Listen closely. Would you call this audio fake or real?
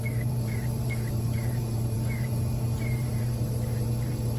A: fake